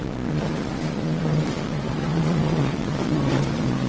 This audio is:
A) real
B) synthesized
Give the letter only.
B